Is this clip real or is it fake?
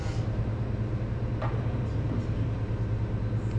real